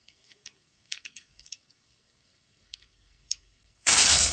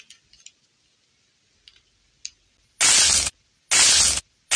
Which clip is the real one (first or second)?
second